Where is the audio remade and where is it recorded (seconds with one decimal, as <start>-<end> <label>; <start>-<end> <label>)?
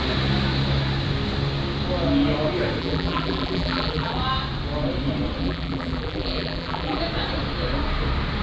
0.0-2.8 recorded; 2.8-4.2 remade; 4.2-5.4 recorded; 5.4-7.0 remade; 7.0-8.4 recorded